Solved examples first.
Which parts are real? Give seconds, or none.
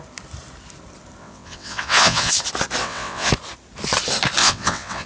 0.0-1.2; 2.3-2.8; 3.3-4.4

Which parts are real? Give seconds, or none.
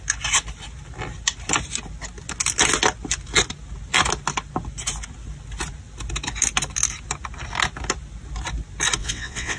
0.0-9.0